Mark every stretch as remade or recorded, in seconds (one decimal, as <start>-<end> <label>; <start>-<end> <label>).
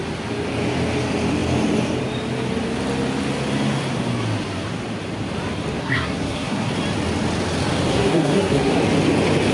0.0-5.8 recorded; 5.8-6.7 remade; 6.7-7.9 recorded; 7.9-8.8 remade; 8.8-9.5 recorded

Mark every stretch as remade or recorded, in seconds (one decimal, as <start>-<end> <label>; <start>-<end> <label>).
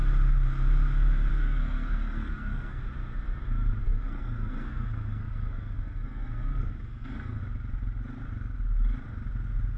0.0-1.3 recorded; 1.3-2.8 remade; 2.8-3.8 recorded; 3.8-7.4 remade; 7.4-9.8 recorded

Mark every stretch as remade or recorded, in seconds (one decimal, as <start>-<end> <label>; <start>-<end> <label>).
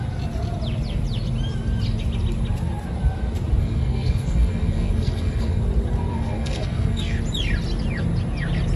0.0-3.6 recorded; 3.6-5.6 remade; 5.6-6.1 recorded; 6.1-7.2 remade; 7.2-8.8 recorded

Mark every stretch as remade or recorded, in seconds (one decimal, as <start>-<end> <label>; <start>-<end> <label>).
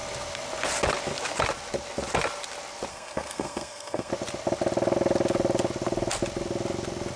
0.0-2.9 recorded; 2.9-4.1 remade; 4.1-7.2 recorded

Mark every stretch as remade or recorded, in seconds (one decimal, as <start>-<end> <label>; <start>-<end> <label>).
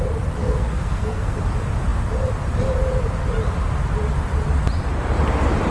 0.0-0.4 recorded; 0.4-1.4 remade; 1.4-5.7 recorded